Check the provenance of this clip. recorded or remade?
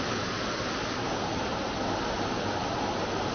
recorded